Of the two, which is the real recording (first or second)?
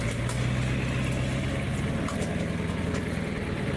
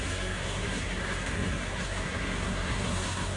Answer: first